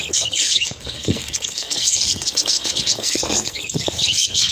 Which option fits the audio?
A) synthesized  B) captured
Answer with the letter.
A